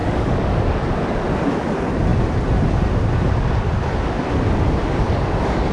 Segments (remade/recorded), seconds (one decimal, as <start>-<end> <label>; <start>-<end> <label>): 0.0-0.9 remade; 0.9-4.8 recorded; 4.8-5.7 remade